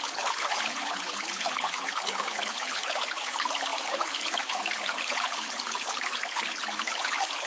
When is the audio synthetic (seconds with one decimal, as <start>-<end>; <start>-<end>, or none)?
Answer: 0.0-7.5